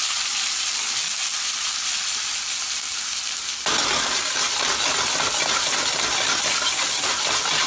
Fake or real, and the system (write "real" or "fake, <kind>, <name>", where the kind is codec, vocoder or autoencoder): real